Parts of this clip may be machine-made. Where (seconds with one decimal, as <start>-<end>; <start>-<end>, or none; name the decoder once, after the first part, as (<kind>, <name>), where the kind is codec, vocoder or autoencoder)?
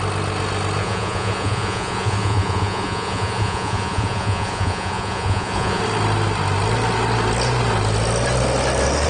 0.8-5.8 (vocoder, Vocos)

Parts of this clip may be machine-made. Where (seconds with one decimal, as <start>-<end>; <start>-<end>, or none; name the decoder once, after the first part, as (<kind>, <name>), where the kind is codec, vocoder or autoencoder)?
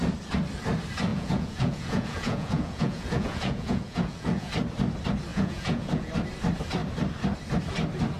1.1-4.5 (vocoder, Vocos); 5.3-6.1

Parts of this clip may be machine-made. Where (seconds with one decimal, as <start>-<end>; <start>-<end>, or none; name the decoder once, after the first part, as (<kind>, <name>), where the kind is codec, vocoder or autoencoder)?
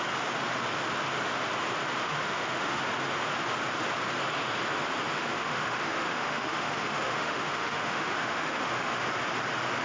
2.0-2.8 (autoencoder, DAC-VAE); 5.2-9.0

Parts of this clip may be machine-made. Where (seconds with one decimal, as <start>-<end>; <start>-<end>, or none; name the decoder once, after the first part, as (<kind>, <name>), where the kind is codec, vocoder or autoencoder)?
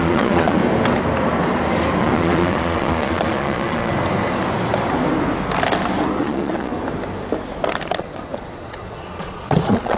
0.0-0.6 (vocoder, Vocos); 2.0-3.9; 6.2-6.7; 7.9-10.0